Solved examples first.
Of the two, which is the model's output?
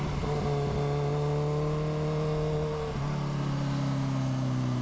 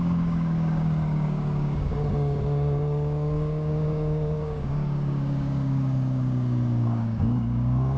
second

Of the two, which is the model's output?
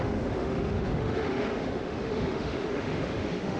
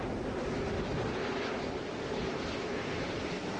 first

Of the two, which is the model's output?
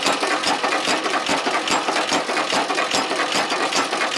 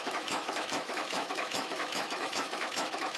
second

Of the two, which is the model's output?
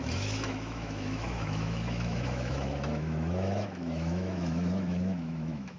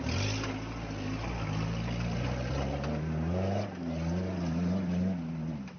first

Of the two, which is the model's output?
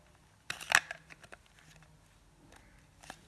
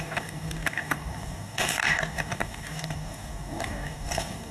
second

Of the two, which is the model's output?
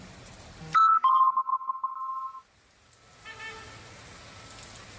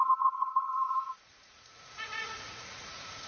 second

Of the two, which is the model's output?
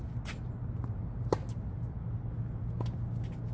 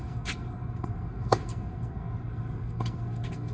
second